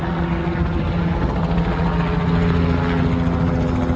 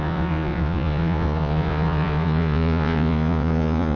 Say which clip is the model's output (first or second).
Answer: second